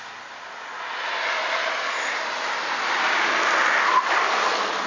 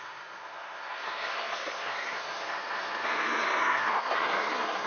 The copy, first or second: second